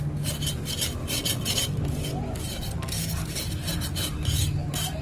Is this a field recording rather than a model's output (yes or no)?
yes